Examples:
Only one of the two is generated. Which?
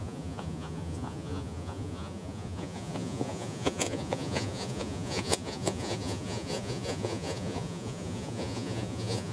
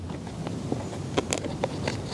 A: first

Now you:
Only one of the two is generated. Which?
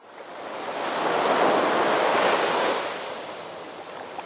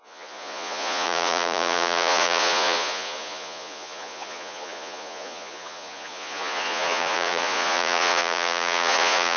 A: second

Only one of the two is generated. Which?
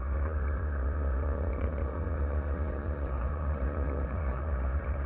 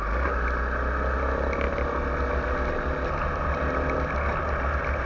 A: first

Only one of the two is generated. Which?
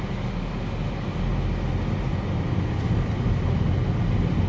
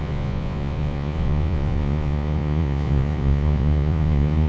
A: second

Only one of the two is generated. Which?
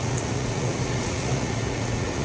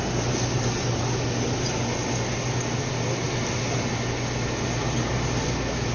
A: first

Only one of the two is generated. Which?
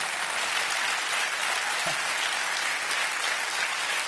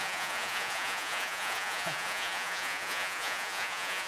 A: second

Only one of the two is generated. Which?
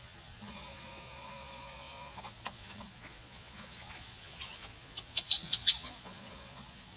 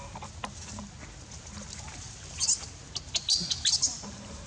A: first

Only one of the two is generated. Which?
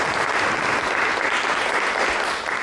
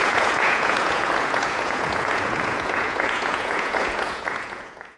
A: second